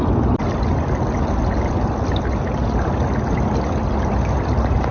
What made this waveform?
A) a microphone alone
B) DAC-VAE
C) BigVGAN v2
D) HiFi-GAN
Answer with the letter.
A